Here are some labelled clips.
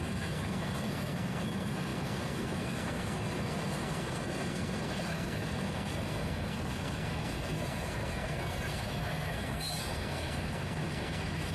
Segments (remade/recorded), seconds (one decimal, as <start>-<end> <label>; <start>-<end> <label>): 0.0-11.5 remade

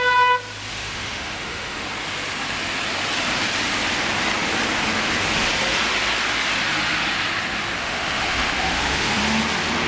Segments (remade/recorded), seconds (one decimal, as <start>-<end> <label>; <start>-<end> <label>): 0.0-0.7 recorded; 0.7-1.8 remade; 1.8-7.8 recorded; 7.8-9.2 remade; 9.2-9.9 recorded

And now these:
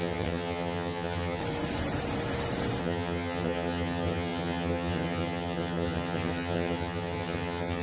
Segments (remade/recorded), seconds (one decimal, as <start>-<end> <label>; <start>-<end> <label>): 0.0-1.4 remade; 1.4-2.8 recorded; 2.8-7.8 remade

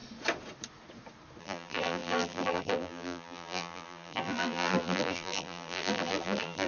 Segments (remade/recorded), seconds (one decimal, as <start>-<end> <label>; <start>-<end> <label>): 0.0-1.4 recorded; 1.4-6.7 remade

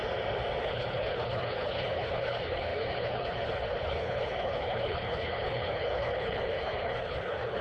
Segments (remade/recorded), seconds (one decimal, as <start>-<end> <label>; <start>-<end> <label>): 0.0-0.6 recorded; 0.6-7.6 remade

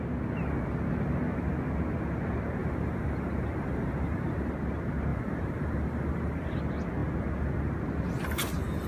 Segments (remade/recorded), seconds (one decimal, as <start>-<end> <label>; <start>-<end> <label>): 0.0-2.6 recorded; 2.6-4.5 remade; 4.5-5.1 recorded; 5.1-6.6 remade; 6.6-8.9 recorded